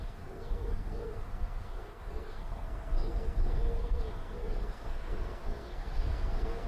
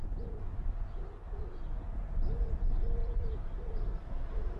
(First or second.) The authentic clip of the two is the second